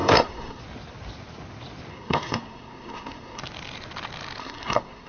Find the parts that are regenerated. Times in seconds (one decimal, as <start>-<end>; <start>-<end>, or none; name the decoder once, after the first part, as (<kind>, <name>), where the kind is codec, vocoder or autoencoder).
0.0-0.6 (codec, SNAC); 1.9-3.4; 4.4-5.1